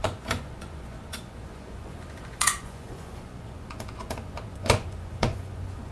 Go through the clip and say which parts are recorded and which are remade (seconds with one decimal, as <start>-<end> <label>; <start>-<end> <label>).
0.0-5.9 remade